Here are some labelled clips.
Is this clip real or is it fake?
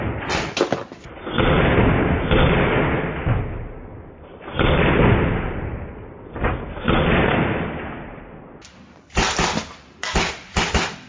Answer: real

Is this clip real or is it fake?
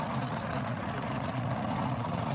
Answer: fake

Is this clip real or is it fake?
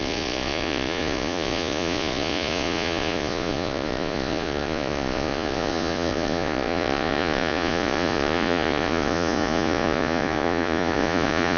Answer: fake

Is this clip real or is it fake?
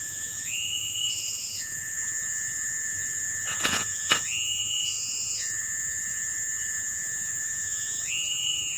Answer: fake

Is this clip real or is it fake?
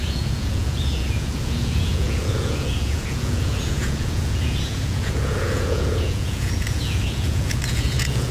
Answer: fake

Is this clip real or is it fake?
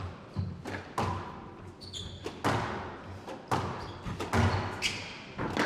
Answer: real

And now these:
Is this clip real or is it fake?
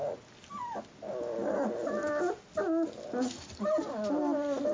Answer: real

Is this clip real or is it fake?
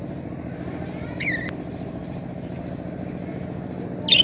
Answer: real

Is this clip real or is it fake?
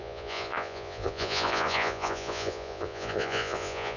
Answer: fake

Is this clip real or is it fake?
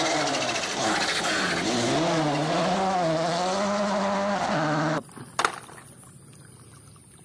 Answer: real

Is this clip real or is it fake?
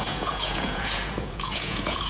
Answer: fake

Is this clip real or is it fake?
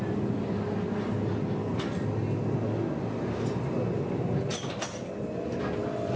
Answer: real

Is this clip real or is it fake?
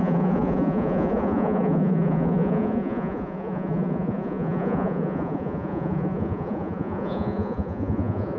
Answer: fake